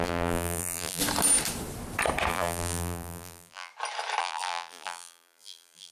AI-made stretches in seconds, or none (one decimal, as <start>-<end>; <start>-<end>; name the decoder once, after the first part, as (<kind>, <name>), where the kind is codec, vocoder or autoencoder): 0.0-1.0 (vocoder, BigVGAN v2); 2.3-3.7; 4.2-5.9